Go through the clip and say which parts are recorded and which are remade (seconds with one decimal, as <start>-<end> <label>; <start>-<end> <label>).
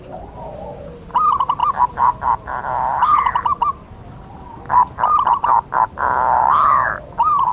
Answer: 0.0-7.5 recorded